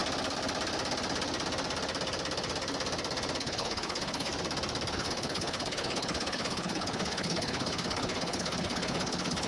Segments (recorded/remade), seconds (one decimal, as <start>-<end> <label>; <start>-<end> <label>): 0.0-3.4 recorded; 3.4-4.3 remade; 4.3-4.9 recorded; 4.9-9.5 remade